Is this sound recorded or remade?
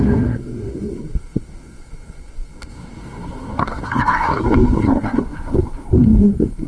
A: remade